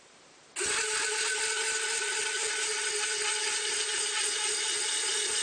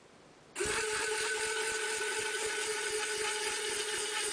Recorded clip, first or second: second